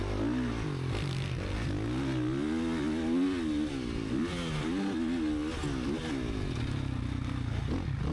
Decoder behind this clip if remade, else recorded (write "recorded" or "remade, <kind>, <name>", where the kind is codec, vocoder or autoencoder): recorded